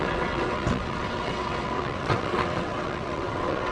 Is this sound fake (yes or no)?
yes